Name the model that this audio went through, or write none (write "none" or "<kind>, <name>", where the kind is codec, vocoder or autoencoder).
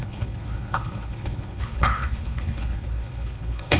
codec, HILCodec